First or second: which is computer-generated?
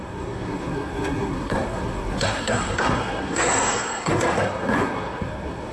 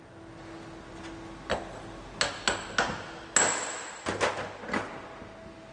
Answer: first